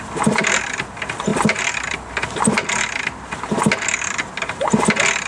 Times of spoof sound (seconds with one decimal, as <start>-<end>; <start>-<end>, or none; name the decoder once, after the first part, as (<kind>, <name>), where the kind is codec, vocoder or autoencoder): none